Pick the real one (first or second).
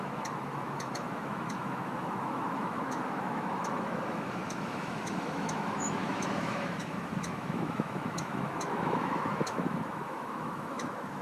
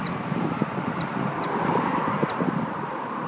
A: second